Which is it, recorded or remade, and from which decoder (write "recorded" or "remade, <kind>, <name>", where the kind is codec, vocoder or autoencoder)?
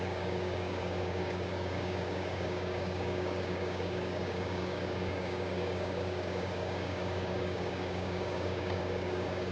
remade, codec, DAC